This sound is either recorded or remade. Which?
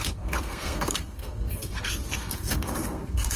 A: remade